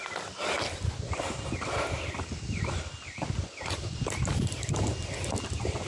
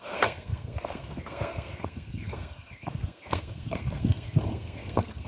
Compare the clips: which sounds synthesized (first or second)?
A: second